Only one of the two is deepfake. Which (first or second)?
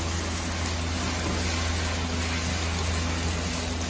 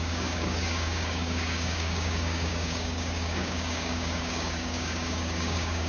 second